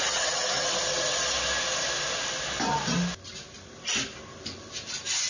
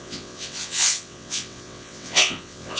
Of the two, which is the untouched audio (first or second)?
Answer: first